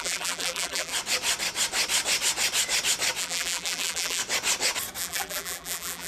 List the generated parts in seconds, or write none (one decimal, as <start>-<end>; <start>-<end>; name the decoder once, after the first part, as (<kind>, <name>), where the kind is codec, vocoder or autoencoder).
0.0-0.9 (vocoder, BigVGAN v2); 3.2-4.2; 5.0-6.1